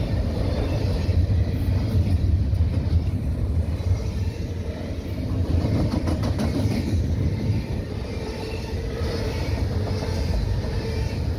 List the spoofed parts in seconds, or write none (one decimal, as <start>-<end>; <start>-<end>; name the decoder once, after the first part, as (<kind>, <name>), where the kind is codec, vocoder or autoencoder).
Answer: 0.0-1.1 (vocoder, BigVGAN v2); 3.3-11.4